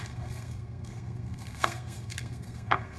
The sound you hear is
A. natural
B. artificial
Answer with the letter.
B